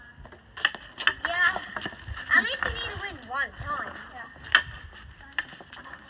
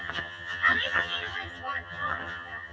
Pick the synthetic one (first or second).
second